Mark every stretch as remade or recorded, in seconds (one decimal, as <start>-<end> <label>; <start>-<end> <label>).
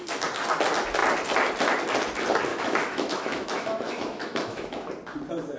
0.0-2.5 recorded; 2.5-4.9 remade; 4.9-5.6 recorded